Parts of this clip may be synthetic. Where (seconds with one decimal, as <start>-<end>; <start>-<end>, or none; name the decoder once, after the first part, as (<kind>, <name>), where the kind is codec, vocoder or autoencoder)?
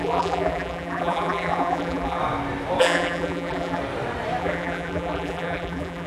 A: 0.0-2.2 (vocoder, BigVGAN v2); 2.8-3.8; 4.4-6.1